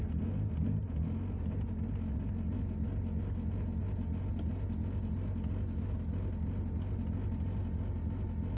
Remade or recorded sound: recorded